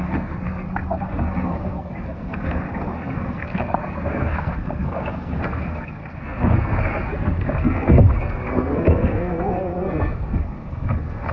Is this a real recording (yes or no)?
no